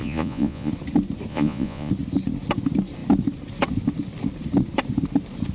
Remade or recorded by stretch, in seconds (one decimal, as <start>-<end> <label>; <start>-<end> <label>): 0.0-0.7 remade; 0.7-1.3 recorded; 1.3-1.9 remade; 1.9-5.5 recorded